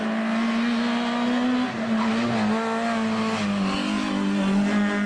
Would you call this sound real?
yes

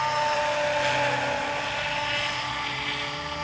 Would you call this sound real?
yes